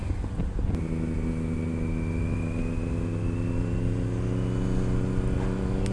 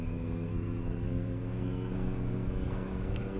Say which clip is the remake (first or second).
second